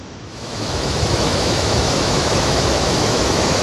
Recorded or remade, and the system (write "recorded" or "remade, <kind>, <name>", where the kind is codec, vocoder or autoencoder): remade, autoencoder, DAC-VAE